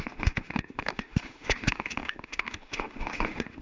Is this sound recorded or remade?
remade